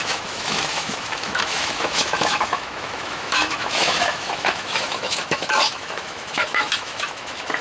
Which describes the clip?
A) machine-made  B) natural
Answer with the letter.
A